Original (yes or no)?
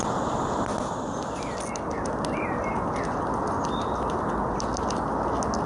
yes